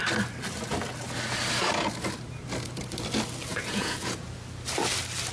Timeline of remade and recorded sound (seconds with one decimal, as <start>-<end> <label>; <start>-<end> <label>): 0.0-3.5 recorded; 3.5-4.3 remade; 4.3-5.3 recorded